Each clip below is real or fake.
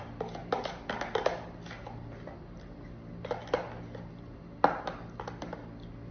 real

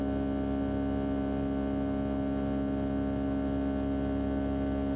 real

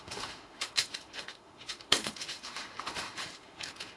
fake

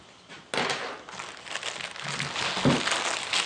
real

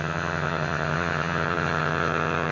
fake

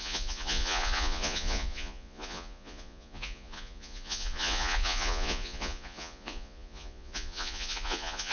fake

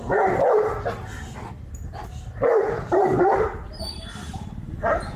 real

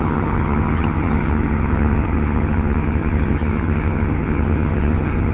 fake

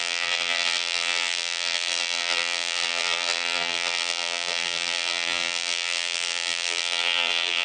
fake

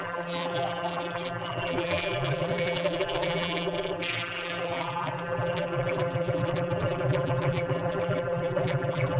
fake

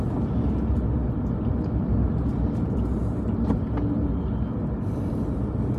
real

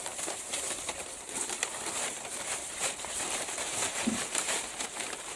fake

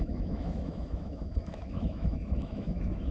fake